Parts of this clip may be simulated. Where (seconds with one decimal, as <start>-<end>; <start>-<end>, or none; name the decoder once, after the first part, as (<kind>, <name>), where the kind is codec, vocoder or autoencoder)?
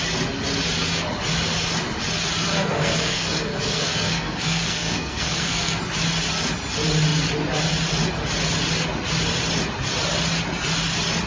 2.5-5.8 (codec, SNAC)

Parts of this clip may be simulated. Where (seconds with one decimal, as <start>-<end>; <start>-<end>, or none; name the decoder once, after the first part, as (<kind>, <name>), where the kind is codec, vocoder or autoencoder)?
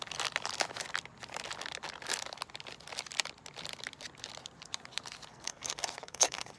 5.3-6.6 (codec, SNAC)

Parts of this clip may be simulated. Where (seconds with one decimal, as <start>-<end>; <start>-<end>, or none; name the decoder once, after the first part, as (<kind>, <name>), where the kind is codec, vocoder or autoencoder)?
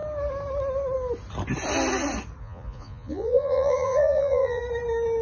2.4-4.6 (vocoder, Vocos)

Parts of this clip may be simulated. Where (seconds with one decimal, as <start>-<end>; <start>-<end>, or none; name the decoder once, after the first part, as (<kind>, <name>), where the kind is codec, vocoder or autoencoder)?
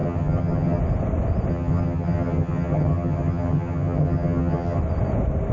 0.0-0.8 (vocoder, HiFi-GAN); 1.5-4.8